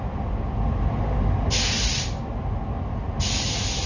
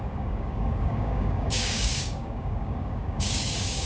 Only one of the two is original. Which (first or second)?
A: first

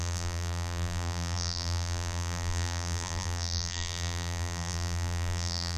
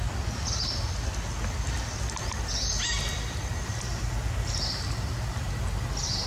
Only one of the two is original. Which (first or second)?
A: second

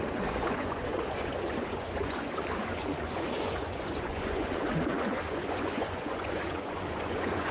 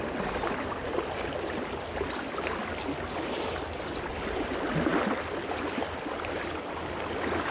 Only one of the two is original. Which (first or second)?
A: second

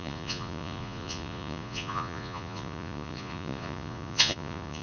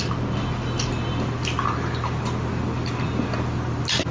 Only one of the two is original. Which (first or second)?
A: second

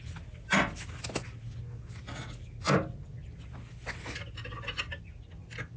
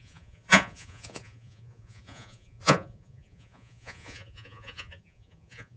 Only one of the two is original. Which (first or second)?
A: first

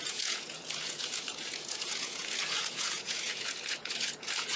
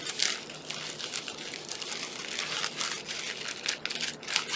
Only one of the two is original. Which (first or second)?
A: second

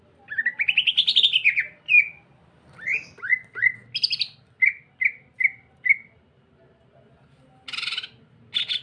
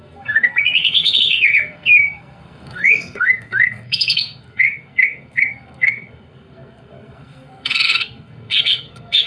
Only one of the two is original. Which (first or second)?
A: first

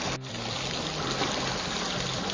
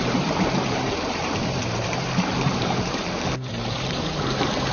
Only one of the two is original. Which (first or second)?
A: first